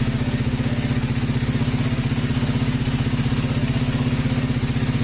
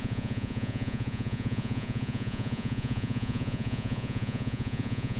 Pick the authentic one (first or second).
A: first